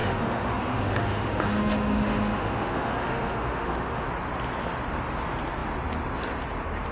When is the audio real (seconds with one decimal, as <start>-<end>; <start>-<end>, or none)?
4.1-6.9